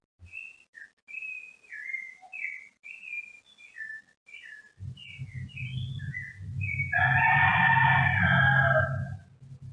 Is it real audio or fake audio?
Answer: real